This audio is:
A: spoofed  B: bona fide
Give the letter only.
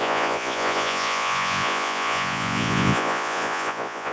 A